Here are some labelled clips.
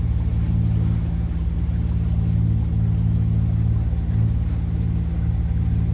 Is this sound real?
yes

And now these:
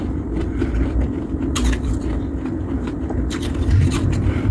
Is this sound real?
no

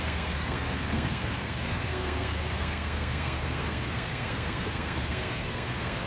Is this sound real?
no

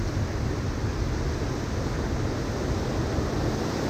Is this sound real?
yes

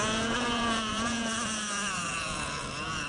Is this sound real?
no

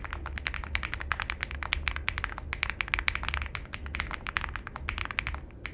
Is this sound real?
yes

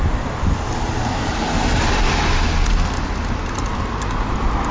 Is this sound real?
yes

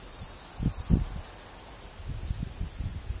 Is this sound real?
yes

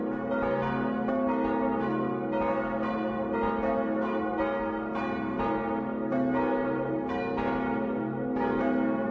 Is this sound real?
yes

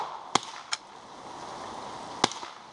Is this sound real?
yes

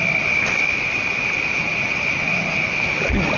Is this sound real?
yes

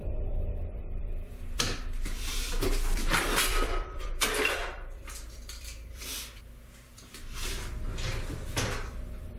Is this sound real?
no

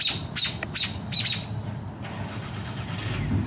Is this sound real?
yes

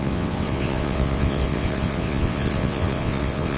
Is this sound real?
no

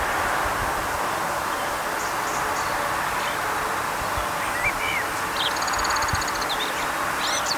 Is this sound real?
yes